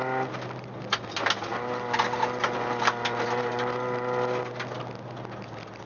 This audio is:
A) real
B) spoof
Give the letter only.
A